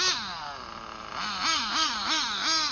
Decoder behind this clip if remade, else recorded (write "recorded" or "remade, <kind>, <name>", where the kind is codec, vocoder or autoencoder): recorded